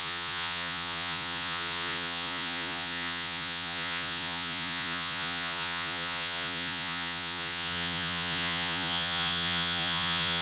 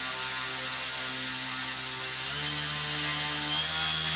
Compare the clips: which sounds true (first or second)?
second